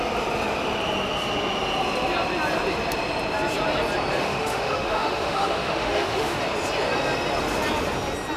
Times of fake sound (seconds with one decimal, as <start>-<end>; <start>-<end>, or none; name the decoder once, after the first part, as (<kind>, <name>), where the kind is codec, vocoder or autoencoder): 4.2-6.4 (autoencoder, DAC-VAE)